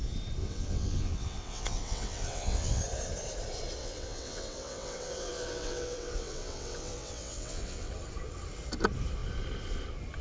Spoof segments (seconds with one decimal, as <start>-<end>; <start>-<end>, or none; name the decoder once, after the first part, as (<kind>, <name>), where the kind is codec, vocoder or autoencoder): 0.4-2.8 (vocoder, WaveNeXt); 3.8-7.9